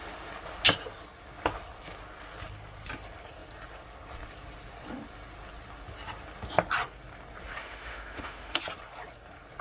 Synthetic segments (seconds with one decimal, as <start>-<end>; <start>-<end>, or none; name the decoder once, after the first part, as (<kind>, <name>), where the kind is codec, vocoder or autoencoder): 7.6-8.6 (autoencoder, DAC-VAE)